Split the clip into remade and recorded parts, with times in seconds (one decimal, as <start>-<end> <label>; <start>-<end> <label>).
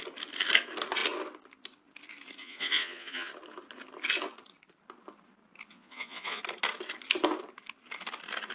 0.0-2.4 recorded; 2.4-3.3 remade; 3.3-5.7 recorded; 5.7-6.4 remade; 6.4-8.5 recorded